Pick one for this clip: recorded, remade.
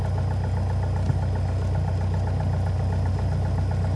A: recorded